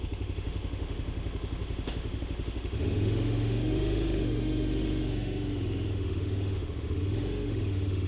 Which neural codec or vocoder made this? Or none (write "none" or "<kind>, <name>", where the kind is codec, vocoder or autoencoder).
autoencoder, DAC-VAE